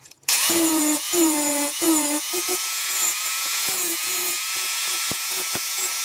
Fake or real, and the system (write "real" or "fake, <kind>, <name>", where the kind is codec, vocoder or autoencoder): fake, vocoder, Vocos